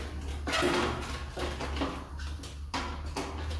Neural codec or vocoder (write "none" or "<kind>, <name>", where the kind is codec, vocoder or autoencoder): none